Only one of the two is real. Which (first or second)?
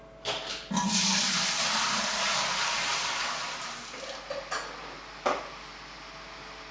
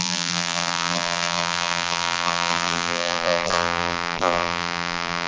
first